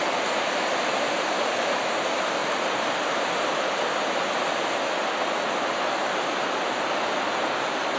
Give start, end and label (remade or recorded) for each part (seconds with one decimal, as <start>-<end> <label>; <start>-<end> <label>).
0.0-8.0 recorded